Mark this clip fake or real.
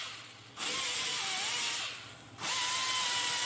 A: real